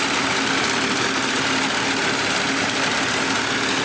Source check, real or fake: real